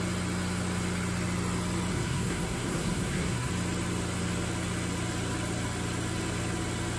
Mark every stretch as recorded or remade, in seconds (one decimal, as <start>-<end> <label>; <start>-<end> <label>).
0.0-1.9 recorded; 1.9-3.5 remade; 3.5-7.0 recorded